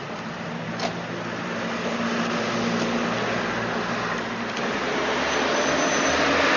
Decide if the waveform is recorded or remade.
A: recorded